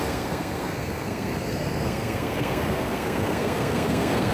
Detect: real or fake fake